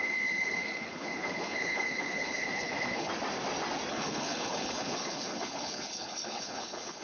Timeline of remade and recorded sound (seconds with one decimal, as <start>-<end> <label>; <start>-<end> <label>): 0.0-3.1 remade; 3.1-3.9 recorded; 3.9-7.0 remade